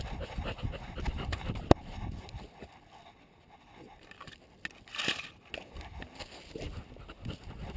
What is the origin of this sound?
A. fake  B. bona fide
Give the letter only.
B